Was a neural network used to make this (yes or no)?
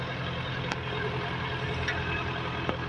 no